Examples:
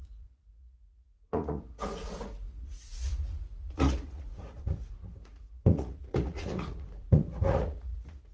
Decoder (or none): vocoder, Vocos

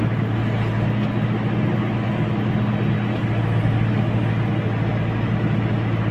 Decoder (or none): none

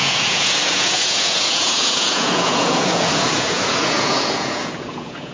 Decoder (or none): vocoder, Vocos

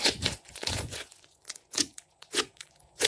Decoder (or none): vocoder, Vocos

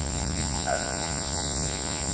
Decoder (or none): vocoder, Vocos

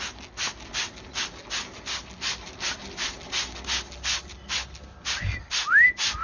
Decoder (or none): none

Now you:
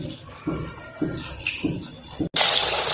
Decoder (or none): none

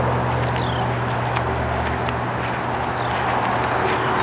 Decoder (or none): none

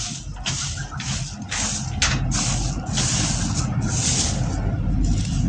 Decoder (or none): none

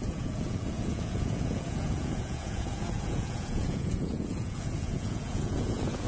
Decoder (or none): vocoder, Vocos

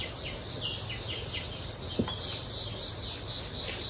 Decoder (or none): none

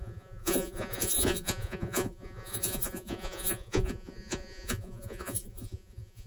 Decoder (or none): vocoder, Vocos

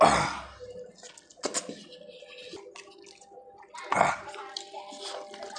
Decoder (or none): none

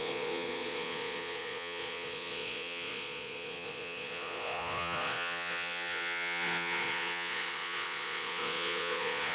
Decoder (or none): vocoder, Vocos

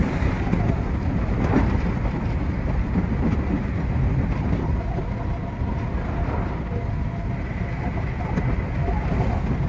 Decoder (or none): none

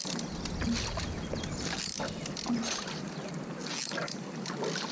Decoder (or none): none